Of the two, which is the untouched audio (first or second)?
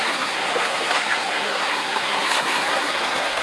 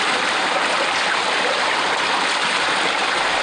second